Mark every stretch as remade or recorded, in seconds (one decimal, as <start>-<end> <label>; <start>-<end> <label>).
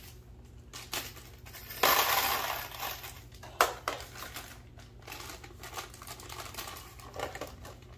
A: 0.0-8.0 recorded